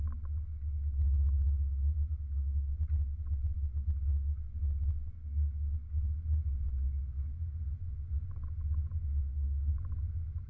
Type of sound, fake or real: real